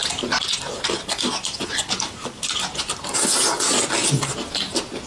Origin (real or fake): real